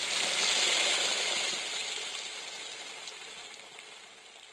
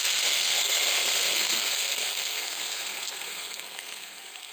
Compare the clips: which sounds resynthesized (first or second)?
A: second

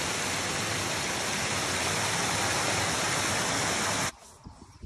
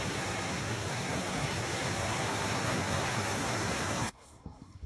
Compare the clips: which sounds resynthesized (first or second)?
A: second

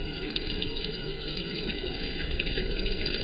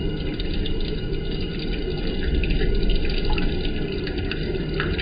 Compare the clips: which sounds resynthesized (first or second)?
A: first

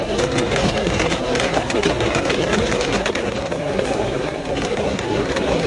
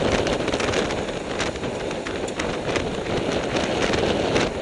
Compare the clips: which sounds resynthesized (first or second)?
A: first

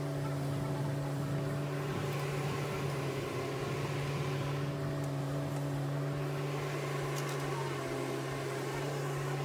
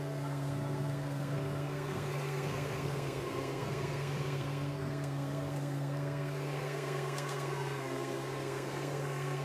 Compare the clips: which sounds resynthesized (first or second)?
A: second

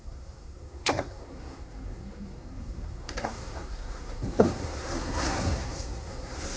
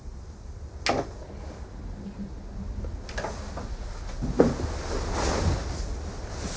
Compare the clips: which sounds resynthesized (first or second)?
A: first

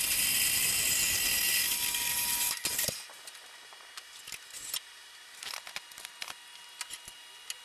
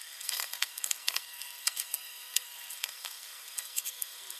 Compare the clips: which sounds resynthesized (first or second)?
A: second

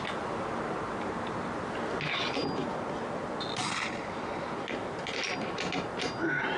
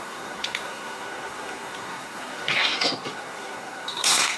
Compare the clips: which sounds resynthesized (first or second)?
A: second